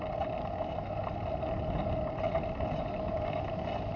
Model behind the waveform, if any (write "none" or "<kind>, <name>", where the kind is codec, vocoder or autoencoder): none